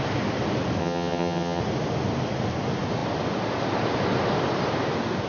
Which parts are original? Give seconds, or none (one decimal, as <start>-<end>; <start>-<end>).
0.0-0.8; 1.6-5.3